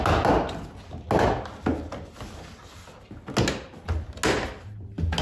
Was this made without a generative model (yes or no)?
yes